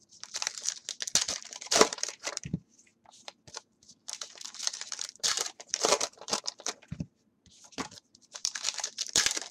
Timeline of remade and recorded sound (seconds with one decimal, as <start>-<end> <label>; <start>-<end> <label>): 0.0-0.8 remade; 0.8-1.3 recorded; 1.3-9.5 remade